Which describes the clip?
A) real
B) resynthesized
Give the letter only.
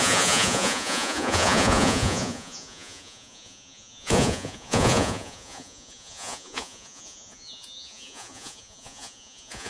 B